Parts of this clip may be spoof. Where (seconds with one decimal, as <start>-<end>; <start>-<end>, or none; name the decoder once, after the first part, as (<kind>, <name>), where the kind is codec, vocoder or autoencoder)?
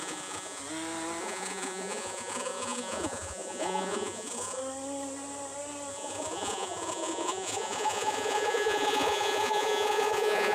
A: 0.0-0.6 (vocoder, Vocos); 1.2-4.6; 5.9-10.5